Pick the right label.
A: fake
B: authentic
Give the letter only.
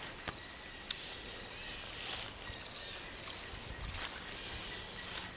B